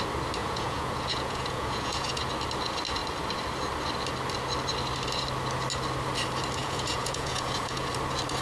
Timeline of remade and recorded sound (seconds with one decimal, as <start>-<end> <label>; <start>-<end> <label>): 0.0-0.4 recorded; 0.4-2.2 remade; 2.2-6.6 recorded; 6.6-7.9 remade; 7.9-8.4 recorded